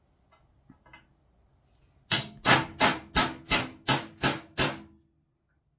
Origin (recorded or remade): recorded